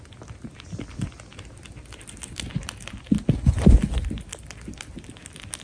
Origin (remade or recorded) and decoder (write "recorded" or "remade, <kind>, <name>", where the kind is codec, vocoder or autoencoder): recorded